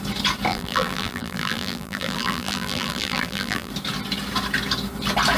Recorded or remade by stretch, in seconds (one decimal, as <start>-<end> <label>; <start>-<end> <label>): 0.0-0.5 recorded; 0.5-3.7 remade; 3.7-5.4 recorded